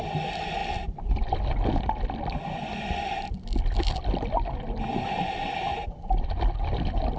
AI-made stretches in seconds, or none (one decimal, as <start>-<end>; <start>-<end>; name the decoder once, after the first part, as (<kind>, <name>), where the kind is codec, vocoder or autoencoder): none